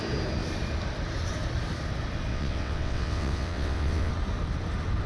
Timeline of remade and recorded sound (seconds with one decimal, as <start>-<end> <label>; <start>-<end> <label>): 0.0-2.3 recorded; 2.3-4.1 remade; 4.1-5.1 recorded